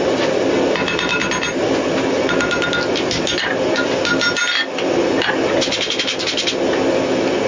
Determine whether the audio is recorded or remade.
recorded